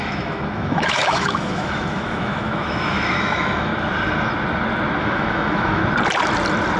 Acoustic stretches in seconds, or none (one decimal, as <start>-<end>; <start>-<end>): 3.7-5.0; 5.8-6.8